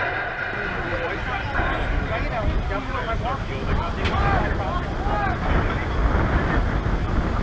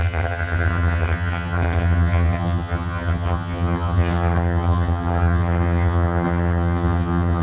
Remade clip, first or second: second